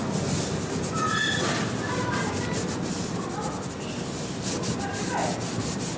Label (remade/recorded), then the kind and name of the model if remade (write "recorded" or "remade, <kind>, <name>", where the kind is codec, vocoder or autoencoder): recorded